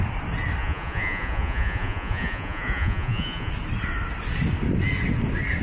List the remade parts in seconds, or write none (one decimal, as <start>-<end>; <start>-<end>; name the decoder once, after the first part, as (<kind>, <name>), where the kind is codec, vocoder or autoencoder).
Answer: 0.6-3.5 (vocoder, Vocos)